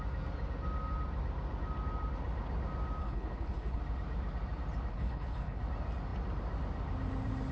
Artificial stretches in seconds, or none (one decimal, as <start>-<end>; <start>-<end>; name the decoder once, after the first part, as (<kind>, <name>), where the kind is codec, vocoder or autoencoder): 3.0-3.8 (codec, HILCodec); 4.9-5.6